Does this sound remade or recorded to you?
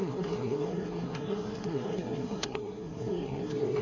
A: remade